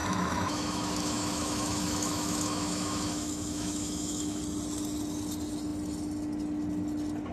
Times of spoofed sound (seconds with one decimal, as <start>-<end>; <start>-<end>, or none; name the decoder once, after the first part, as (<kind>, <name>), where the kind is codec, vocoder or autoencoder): 0.0-4.4 (autoencoder, DAC-VAE)